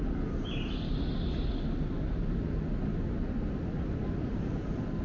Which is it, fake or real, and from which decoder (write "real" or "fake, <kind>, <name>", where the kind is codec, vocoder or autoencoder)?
real